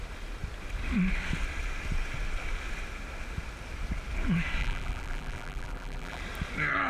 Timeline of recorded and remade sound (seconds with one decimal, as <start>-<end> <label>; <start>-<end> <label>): 0.0-4.6 recorded; 4.6-6.2 remade; 6.2-6.9 recorded